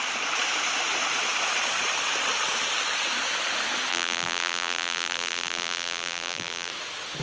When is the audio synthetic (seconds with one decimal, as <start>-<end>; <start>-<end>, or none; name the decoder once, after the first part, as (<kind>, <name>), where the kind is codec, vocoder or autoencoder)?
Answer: 3.9-6.7 (vocoder, BigVGAN v2)